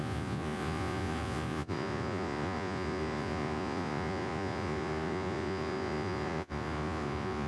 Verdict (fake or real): fake